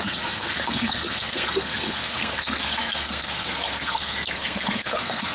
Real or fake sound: fake